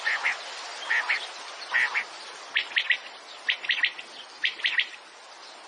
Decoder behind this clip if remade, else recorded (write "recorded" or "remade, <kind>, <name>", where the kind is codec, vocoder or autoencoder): recorded